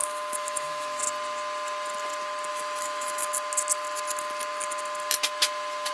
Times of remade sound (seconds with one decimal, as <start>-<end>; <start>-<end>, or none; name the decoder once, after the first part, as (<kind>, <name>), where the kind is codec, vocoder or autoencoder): 0.0-1.0 (autoencoder, DAC-VAE); 2.5-3.3